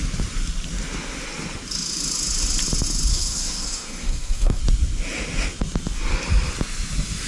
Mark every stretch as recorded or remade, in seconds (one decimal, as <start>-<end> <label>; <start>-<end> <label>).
0.0-3.1 recorded; 3.1-4.6 remade; 4.6-7.3 recorded